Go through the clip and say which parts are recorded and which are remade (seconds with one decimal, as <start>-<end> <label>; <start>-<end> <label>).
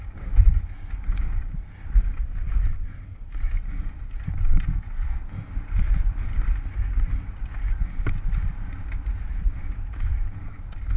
0.0-4.7 recorded; 4.7-5.2 remade; 5.2-11.0 recorded